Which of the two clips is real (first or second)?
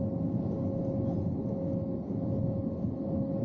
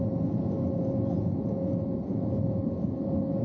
first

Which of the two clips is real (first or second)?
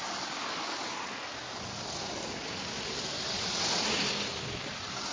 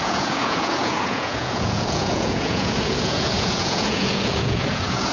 first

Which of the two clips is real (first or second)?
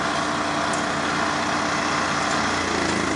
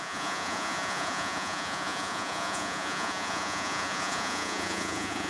first